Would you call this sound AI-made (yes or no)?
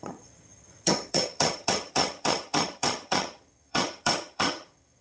yes